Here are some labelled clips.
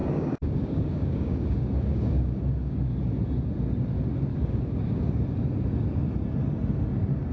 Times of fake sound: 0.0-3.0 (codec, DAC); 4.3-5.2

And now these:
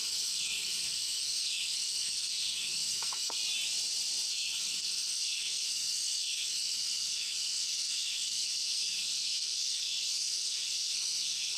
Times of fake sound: 0.0-3.4 (codec, SNAC); 4.3-11.6